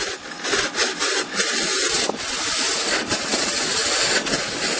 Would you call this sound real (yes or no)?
yes